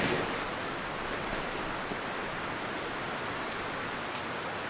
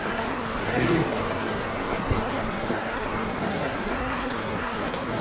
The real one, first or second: first